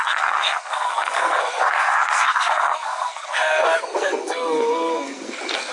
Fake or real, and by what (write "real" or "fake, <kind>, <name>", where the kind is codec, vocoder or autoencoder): fake, codec, SNAC